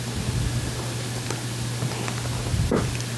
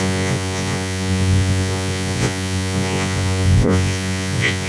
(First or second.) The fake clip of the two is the second